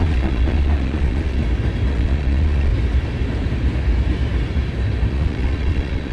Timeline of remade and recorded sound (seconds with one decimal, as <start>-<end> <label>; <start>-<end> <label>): 0.0-1.4 remade; 1.4-1.9 recorded; 1.9-2.7 remade; 2.7-5.1 recorded; 5.1-6.1 remade